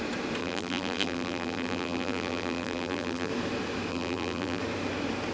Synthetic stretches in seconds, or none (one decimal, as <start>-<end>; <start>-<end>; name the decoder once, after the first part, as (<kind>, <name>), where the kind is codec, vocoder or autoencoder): 0.4-3.3 (vocoder, BigVGAN v2); 3.9-4.6